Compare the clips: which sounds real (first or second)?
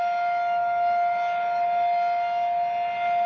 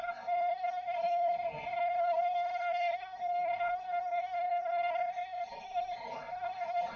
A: first